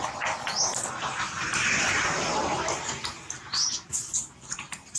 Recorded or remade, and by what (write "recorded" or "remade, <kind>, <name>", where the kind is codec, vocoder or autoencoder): recorded